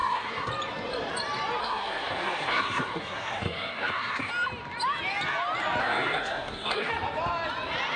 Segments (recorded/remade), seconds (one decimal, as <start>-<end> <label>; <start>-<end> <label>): 0.0-0.5 remade; 0.5-1.6 recorded; 1.6-4.3 remade; 4.3-5.8 recorded; 5.8-6.9 remade; 6.9-8.0 recorded